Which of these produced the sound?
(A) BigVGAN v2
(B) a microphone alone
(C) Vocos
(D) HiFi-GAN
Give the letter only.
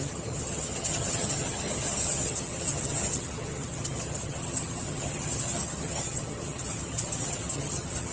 D